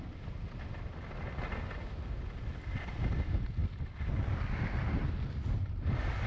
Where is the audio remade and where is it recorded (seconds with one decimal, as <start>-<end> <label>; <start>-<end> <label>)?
0.0-6.3 recorded